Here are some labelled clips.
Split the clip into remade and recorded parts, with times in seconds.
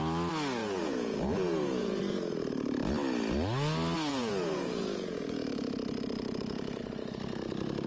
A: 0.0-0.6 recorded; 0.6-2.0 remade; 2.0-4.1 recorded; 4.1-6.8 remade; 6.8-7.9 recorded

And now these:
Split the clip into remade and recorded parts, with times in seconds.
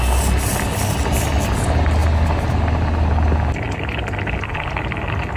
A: 0.0-5.4 recorded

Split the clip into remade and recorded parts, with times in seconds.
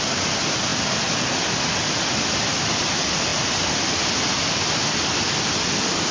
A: 0.0-6.1 recorded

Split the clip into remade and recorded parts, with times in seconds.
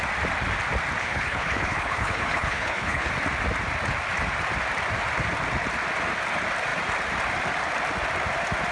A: 0.0-1.0 recorded; 1.0-3.1 remade; 3.1-8.7 recorded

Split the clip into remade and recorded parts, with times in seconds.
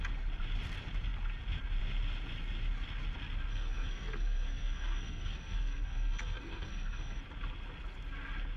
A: 0.0-3.5 recorded; 3.5-7.2 remade; 7.2-8.6 recorded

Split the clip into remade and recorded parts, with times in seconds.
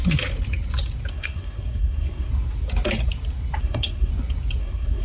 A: 0.0-1.1 recorded; 1.1-2.3 remade; 2.3-3.6 recorded; 3.6-4.1 remade; 4.1-4.6 recorded; 4.6-5.0 remade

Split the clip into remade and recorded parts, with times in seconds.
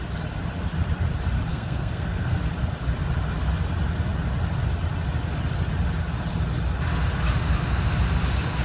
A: 0.0-1.5 recorded; 1.5-2.4 remade; 2.4-8.6 recorded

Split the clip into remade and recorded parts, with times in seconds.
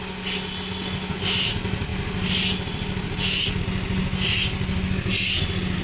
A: 0.0-5.8 recorded